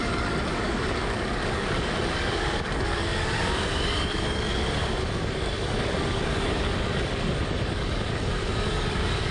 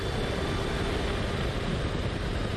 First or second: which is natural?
second